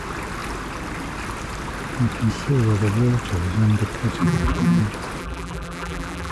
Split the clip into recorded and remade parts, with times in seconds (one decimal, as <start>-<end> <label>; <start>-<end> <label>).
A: 0.0-4.2 recorded; 4.2-4.8 remade; 4.8-5.2 recorded; 5.2-6.3 remade